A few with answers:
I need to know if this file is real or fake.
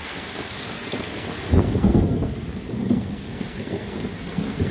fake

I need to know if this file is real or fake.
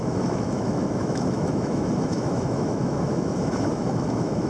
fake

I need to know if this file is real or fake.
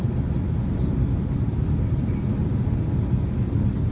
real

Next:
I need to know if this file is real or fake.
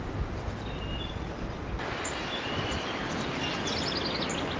real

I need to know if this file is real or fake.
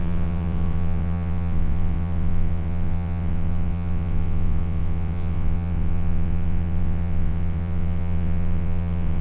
fake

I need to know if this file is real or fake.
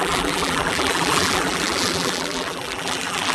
fake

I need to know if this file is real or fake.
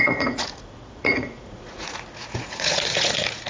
fake